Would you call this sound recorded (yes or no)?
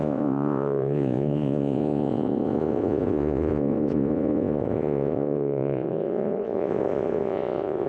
no